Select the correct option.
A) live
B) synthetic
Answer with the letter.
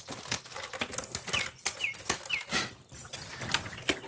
A